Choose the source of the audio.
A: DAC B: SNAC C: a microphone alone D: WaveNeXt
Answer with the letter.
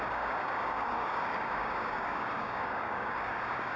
A